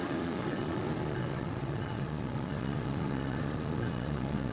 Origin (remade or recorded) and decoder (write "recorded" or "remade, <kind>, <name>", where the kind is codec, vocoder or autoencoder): remade, vocoder, Vocos